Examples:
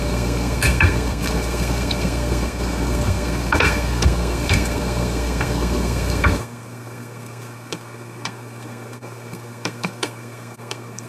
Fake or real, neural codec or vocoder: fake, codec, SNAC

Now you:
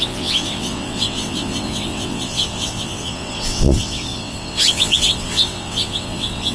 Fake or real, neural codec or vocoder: fake, vocoder, WaveNeXt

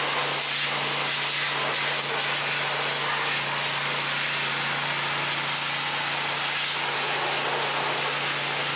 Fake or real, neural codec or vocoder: real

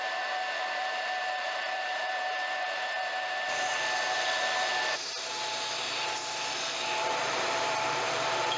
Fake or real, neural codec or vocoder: fake, vocoder, BigVGAN v2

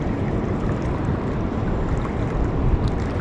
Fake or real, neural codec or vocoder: real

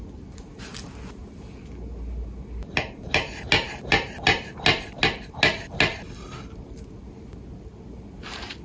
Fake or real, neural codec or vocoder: real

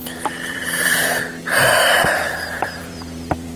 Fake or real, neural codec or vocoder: fake, vocoder, BigVGAN v2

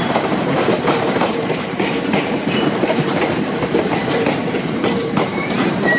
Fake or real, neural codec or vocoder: fake, vocoder, BigVGAN v2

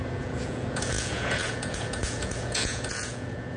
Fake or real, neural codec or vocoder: fake, vocoder, Vocos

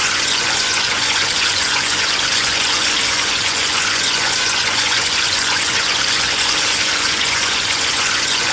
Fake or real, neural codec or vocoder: fake, vocoder, Vocos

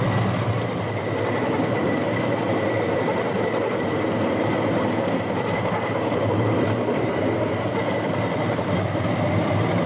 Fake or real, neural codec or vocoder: real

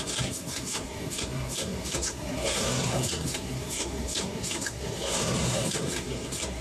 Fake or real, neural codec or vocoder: fake, codec, SNAC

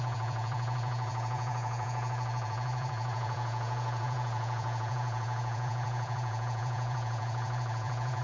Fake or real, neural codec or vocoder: fake, vocoder, Vocos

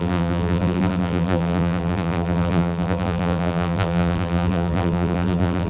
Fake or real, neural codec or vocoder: fake, vocoder, BigVGAN v2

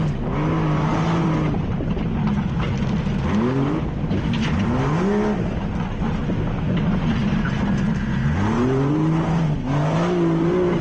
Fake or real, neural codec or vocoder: real